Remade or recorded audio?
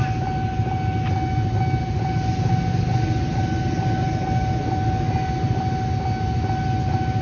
recorded